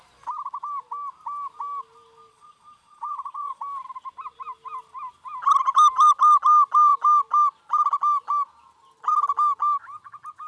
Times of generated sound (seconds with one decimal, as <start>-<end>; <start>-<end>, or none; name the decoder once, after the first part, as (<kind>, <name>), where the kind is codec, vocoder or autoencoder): 2.3-3.6 (vocoder, Vocos)